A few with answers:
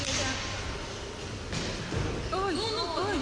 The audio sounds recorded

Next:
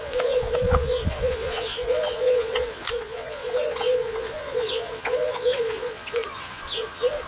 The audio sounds remade